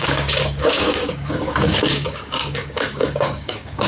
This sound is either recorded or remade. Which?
remade